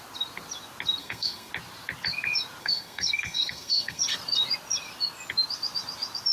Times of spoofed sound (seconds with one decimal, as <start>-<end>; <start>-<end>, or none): 1.0-1.5; 2.6-4.0